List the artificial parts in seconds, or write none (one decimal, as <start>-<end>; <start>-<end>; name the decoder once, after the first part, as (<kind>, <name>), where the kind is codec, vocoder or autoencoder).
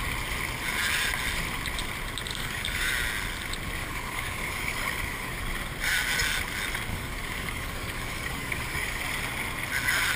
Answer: 2.3-2.9 (codec, DAC); 3.8-5.4; 6.9-9.0